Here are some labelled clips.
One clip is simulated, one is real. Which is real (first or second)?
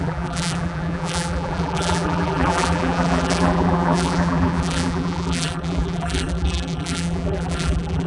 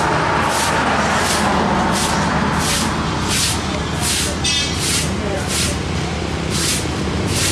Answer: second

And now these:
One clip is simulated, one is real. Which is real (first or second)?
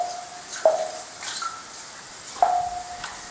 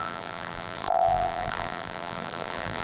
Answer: first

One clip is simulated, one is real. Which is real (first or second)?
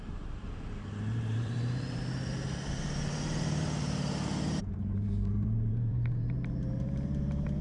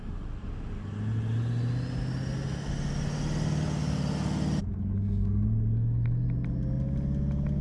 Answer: second